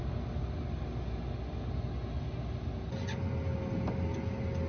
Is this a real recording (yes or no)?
yes